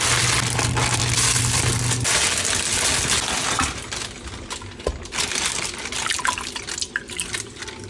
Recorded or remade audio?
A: recorded